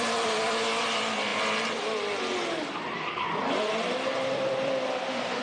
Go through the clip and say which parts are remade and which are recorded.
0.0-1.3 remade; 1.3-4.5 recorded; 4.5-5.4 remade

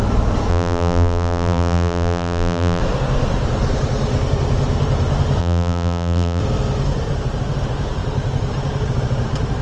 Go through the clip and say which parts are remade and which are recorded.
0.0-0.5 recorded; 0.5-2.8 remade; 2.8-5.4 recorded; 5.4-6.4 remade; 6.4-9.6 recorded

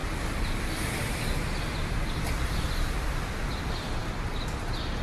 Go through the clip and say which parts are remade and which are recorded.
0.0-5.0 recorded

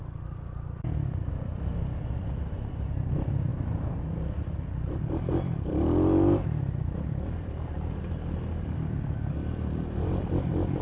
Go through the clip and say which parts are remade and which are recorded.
0.0-3.5 remade; 3.5-4.4 recorded; 4.4-10.8 remade

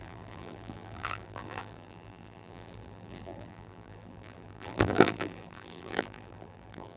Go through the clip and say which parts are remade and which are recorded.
0.0-7.0 remade

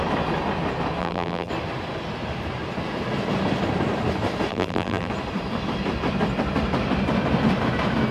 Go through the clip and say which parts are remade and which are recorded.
0.0-1.0 recorded; 1.0-1.5 remade; 1.5-4.5 recorded; 4.5-5.1 remade; 5.1-8.1 recorded

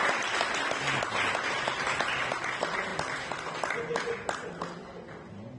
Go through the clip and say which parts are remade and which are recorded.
0.0-5.6 recorded